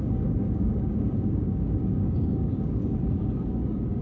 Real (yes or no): no